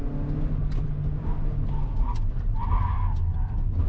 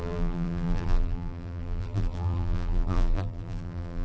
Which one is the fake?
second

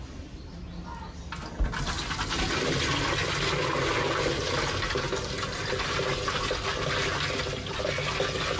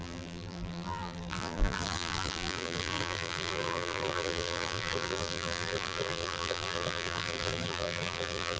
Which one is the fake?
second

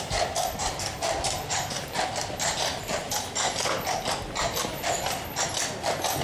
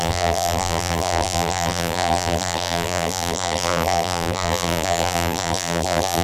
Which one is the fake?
second